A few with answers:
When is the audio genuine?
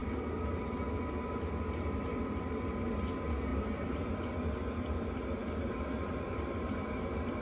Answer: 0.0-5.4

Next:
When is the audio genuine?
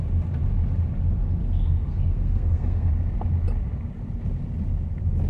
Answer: 0.0-1.4; 2.9-5.3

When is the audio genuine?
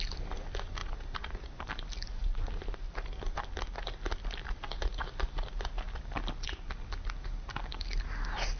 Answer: 0.0-8.6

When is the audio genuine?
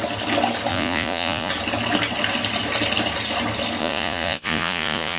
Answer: 0.0-0.7; 1.5-3.8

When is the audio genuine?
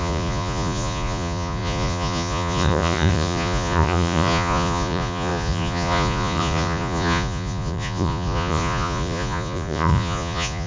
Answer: none